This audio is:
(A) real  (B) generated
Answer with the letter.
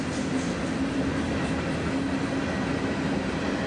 A